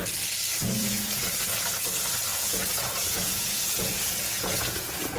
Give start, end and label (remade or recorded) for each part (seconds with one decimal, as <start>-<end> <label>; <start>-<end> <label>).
0.0-0.6 recorded; 0.6-1.2 remade; 1.2-2.3 recorded; 2.3-5.2 remade